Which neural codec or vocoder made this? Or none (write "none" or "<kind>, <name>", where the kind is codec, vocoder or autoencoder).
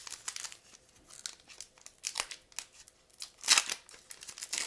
none